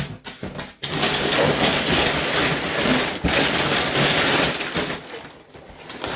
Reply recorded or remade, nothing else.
recorded